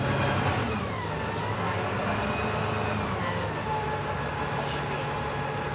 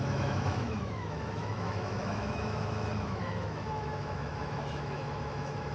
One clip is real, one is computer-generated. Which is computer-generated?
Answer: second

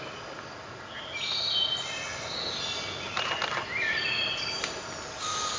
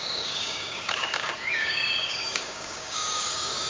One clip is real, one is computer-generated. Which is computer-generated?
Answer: second